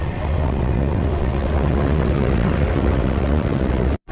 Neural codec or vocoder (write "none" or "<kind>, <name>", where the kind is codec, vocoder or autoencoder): vocoder, WaveNeXt